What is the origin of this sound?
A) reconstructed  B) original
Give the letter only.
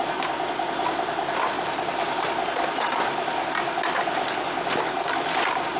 B